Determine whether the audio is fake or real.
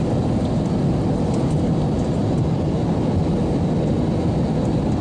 real